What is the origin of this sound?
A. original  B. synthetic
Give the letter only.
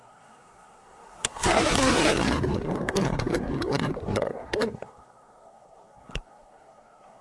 B